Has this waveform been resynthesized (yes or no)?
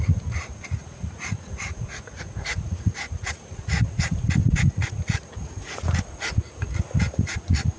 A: yes